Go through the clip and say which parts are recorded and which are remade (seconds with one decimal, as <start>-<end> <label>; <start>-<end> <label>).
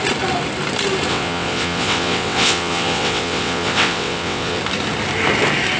0.0-1.1 recorded; 1.1-4.6 remade; 4.6-5.8 recorded